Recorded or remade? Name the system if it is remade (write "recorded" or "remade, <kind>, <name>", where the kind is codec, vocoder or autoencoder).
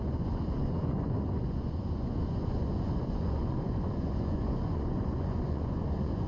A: remade, vocoder, Vocos